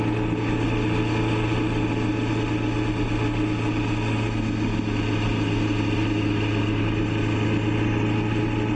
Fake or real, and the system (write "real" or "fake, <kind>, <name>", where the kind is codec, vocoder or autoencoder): real